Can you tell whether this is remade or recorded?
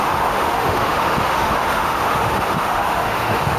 remade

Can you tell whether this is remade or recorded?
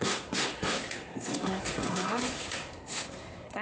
remade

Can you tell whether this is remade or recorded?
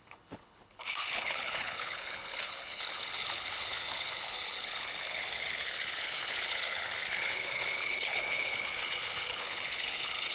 remade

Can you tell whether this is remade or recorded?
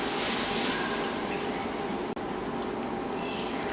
recorded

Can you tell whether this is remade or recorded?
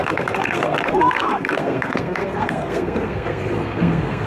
remade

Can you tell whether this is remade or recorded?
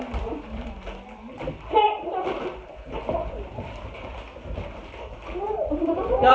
remade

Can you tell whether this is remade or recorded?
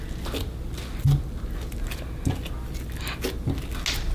recorded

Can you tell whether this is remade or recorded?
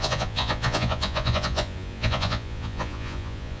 remade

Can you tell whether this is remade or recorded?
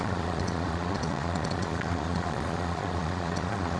remade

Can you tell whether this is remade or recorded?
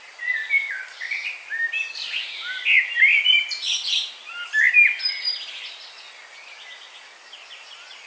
recorded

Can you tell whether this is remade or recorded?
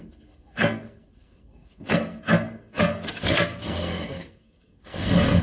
remade